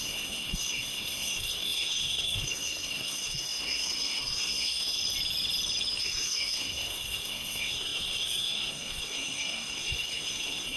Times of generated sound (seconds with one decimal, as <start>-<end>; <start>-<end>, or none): 0.0-5.0; 6.0-10.8